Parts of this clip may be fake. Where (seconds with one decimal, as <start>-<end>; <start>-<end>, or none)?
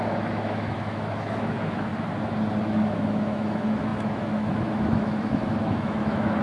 0.0-1.9; 2.6-6.4